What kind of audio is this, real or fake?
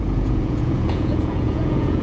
fake